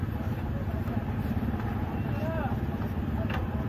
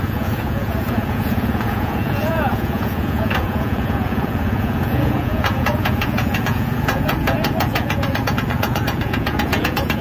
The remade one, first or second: second